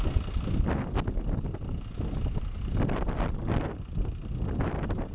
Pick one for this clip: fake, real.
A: real